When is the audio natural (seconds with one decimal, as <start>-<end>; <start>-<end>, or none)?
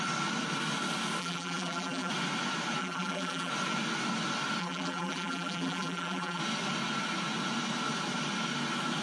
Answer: 0.0-1.2; 2.1-2.8; 3.5-4.6; 6.4-9.0